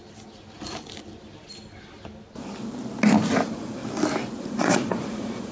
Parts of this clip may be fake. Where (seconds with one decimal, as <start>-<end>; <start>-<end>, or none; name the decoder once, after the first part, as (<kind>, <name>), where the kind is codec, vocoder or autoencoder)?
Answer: 3.3-3.8 (vocoder, Vocos); 4.4-5.5